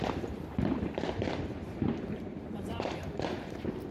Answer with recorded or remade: remade